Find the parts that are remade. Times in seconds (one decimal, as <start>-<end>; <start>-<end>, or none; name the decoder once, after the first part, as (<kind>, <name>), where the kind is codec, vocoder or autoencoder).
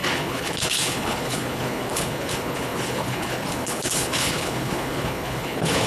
0.0-5.9 (codec, HILCodec)